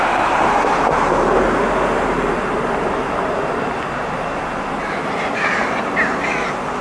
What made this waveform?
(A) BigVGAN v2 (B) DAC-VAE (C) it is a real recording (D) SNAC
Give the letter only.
C